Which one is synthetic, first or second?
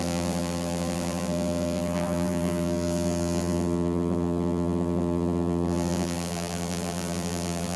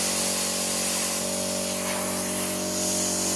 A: first